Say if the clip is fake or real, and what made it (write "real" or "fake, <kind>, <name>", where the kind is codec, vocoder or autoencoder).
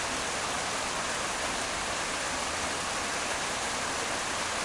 real